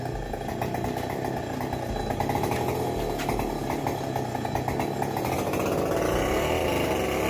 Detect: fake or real real